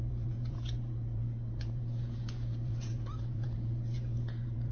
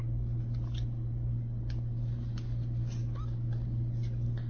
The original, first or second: second